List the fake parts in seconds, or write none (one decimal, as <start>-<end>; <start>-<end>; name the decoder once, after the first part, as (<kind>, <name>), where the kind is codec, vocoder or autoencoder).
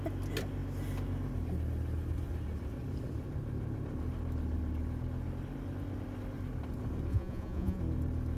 7.1-7.8 (vocoder, Vocos)